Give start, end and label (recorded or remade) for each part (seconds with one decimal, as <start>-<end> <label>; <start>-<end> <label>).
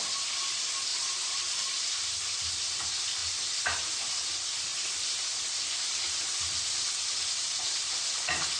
0.0-0.9 recorded; 0.9-1.9 remade; 1.9-3.2 recorded; 3.2-4.1 remade; 4.1-4.7 recorded; 4.7-6.3 remade; 6.3-8.6 recorded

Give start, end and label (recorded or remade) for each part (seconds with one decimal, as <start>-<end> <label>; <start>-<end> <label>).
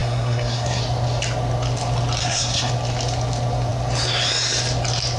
0.0-0.8 remade; 0.8-2.2 recorded; 2.2-2.7 remade; 2.7-5.2 recorded